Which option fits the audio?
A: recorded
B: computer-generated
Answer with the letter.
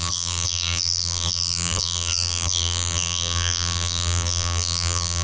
B